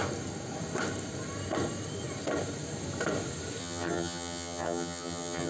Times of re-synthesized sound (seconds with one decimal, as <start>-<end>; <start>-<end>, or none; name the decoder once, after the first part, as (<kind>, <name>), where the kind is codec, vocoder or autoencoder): 3.6-5.5 (vocoder, HiFi-GAN)